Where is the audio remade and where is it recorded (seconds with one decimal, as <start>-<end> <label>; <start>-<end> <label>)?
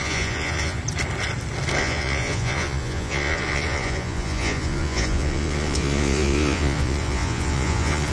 0.0-0.8 remade; 0.8-1.8 recorded; 1.8-8.1 remade